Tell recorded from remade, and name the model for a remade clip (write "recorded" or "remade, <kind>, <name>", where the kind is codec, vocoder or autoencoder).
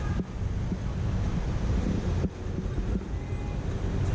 recorded